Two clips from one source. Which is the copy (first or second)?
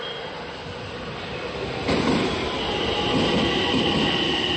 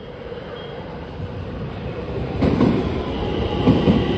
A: second